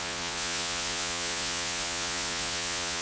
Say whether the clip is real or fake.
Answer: fake